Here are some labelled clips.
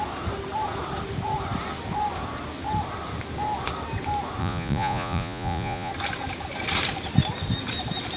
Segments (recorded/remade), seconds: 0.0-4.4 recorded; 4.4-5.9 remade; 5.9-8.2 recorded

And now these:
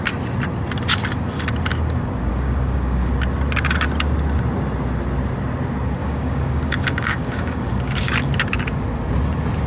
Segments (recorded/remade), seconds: 0.0-2.3 recorded; 2.3-3.1 remade; 3.1-6.0 recorded; 6.0-8.1 remade; 8.1-9.7 recorded